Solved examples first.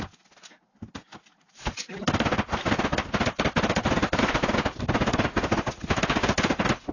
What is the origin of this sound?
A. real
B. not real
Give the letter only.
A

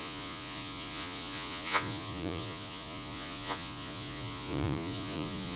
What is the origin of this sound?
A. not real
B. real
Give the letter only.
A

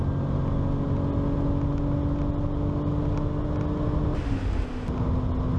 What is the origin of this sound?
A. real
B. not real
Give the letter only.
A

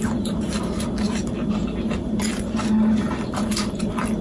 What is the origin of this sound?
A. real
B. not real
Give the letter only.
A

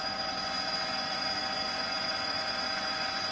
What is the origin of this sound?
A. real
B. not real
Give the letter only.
B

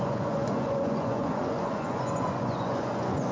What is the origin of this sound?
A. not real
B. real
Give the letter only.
A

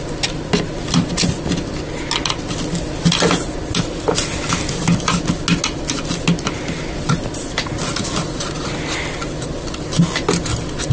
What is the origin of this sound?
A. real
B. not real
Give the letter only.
A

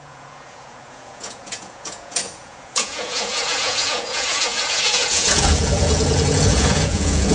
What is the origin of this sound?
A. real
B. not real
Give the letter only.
B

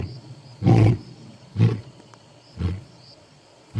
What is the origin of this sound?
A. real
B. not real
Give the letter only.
B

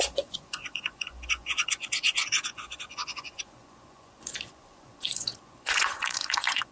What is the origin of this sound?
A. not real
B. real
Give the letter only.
A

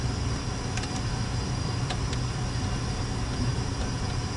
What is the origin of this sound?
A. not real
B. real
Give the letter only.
B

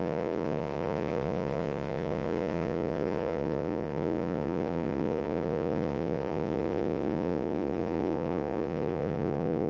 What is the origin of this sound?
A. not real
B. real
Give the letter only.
A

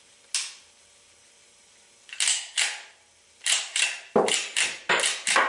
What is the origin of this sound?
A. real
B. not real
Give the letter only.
A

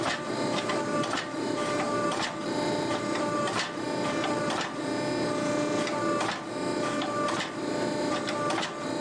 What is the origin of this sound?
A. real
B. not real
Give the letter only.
A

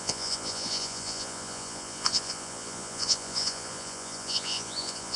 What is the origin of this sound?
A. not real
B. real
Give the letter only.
A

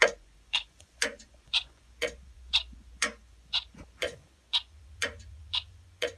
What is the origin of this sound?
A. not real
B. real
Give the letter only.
A